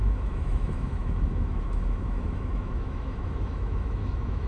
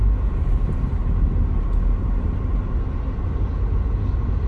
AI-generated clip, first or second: first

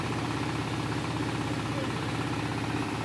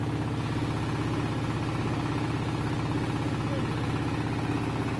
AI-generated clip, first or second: first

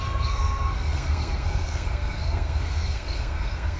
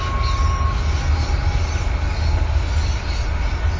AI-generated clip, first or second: first